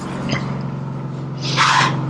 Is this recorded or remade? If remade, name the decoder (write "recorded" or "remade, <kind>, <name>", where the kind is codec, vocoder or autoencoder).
recorded